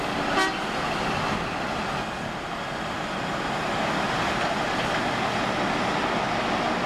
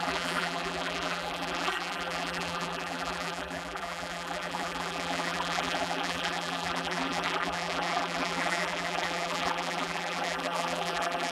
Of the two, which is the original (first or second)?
first